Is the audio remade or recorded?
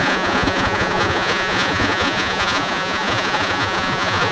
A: remade